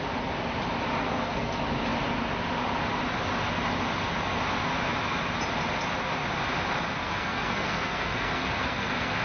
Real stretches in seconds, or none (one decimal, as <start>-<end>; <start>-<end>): 0.0-1.0; 1.5-7.0